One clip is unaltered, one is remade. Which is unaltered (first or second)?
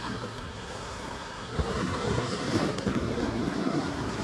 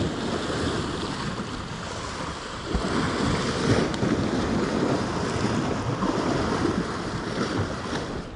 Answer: second